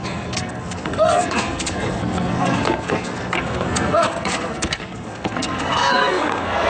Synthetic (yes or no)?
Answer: yes